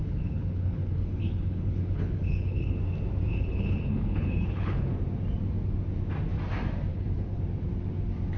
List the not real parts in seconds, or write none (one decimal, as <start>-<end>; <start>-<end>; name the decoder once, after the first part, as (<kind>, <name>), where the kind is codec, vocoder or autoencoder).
0.0-2.8 (codec, HILCodec); 3.3-4.9; 6.9-7.4